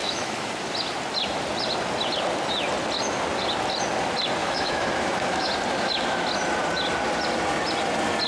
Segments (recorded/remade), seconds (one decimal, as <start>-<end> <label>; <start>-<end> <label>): 0.0-0.5 remade; 0.5-4.4 recorded; 4.4-5.5 remade; 5.5-8.3 recorded